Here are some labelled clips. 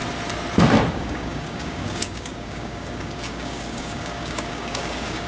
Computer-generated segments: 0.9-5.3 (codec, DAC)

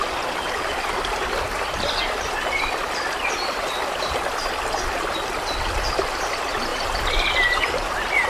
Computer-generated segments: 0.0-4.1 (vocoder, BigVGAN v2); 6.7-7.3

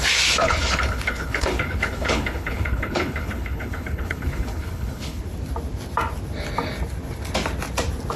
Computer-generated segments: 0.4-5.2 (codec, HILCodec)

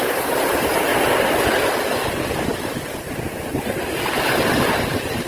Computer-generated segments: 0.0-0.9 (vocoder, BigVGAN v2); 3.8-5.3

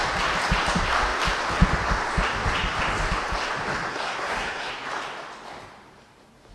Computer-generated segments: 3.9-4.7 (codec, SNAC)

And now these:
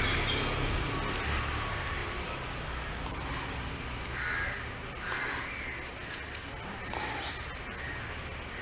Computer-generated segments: none